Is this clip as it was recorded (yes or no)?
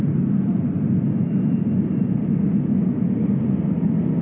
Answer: yes